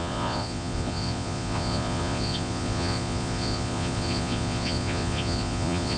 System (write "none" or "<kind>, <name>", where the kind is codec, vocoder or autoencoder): vocoder, Vocos